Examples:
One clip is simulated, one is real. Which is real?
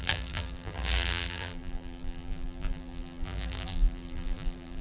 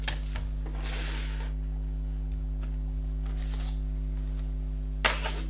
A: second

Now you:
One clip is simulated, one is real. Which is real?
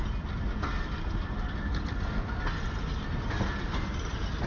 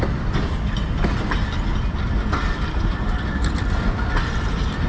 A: first